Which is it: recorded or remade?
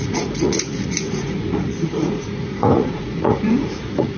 remade